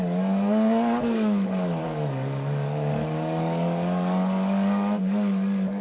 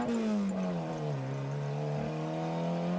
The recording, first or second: second